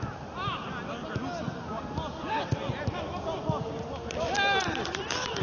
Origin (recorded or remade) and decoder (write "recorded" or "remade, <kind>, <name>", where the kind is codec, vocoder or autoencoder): recorded